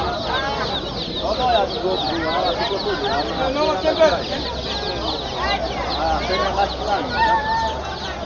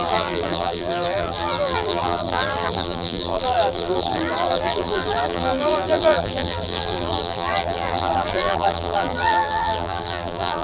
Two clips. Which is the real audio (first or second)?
first